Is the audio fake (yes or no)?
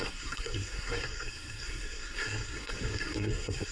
yes